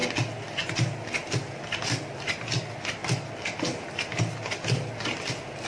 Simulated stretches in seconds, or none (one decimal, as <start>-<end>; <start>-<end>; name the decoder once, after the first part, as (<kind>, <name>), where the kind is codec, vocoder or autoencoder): none